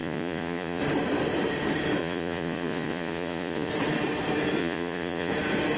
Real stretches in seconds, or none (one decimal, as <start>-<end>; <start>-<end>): 0.8-2.0; 3.7-4.6; 5.3-5.8